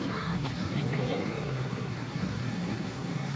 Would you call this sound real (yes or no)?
no